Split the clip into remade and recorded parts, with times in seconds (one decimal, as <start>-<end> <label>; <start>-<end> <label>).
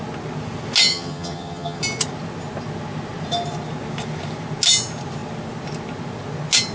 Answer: 0.0-0.9 recorded; 0.9-1.8 remade; 1.8-6.7 recorded